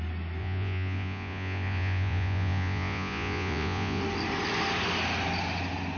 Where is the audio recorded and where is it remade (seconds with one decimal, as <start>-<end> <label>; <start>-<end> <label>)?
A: 0.0-0.4 recorded; 0.4-4.0 remade; 4.0-6.0 recorded